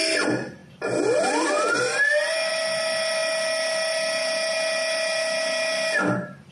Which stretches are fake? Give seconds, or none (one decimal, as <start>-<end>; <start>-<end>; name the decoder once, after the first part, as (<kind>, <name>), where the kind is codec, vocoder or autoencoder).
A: none